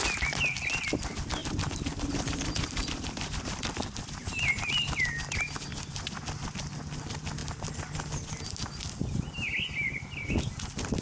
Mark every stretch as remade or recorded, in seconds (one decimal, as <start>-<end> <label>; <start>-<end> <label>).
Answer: 0.0-1.4 recorded; 1.4-4.1 remade; 4.1-11.0 recorded